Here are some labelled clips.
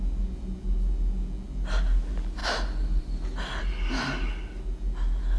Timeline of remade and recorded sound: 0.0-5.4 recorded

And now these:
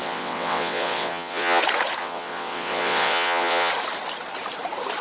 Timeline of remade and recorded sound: 0.0-1.6 remade; 1.6-2.0 recorded; 2.0-3.7 remade; 3.7-5.0 recorded